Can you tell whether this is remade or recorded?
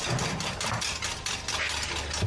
recorded